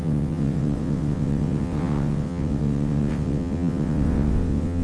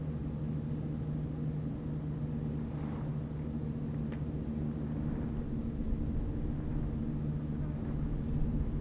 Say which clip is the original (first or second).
second